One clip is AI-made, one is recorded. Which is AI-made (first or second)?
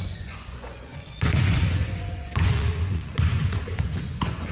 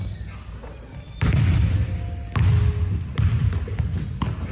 first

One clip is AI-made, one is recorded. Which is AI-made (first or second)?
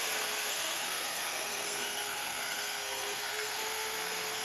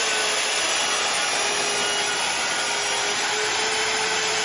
first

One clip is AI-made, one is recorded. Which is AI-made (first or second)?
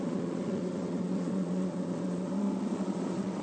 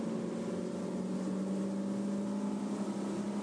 first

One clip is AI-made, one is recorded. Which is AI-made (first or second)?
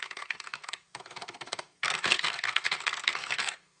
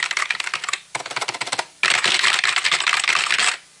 first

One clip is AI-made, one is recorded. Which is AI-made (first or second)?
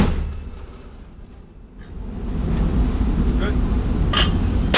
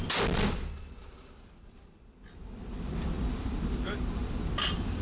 second